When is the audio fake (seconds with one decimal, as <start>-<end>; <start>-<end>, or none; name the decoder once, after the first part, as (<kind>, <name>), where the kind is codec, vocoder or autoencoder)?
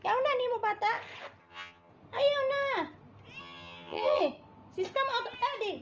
1.4-1.9 (vocoder, HiFi-GAN); 3.4-4.2